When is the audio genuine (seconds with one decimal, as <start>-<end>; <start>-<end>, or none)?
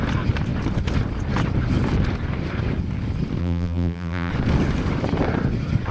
0.0-3.4; 4.3-5.9